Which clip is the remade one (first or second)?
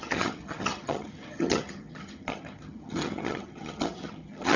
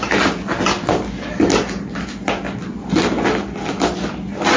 first